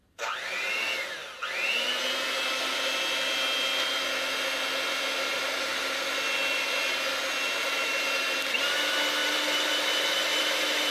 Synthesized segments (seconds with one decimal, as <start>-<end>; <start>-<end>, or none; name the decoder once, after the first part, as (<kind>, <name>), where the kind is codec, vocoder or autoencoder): 5.7-6.7 (vocoder, BigVGAN v2); 9.2-9.7; 10.3-10.9